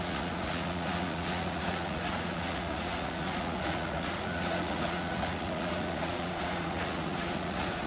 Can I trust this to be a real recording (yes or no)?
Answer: no